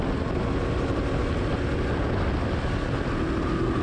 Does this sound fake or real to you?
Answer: real